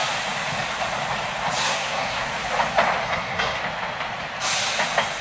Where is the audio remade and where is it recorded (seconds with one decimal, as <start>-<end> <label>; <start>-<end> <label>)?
0.0-1.6 recorded; 1.6-2.3 remade; 2.3-3.0 recorded; 3.0-3.6 remade; 3.6-5.2 recorded